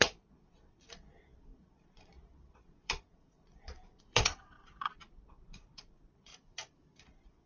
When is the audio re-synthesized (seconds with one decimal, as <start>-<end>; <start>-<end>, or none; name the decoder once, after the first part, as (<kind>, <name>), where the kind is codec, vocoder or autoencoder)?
0.0-6.3 (vocoder, Vocos); 7.0-7.5